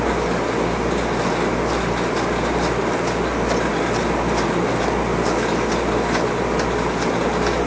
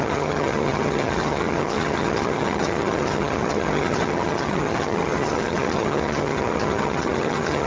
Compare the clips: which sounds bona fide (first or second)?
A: first